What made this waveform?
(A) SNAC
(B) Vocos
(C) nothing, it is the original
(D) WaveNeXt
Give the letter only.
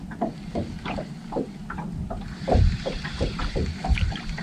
C